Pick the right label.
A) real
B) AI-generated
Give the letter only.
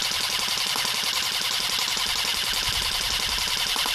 A